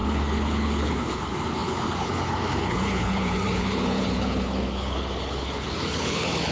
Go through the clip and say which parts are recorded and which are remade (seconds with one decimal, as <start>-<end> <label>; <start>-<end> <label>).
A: 0.0-6.5 remade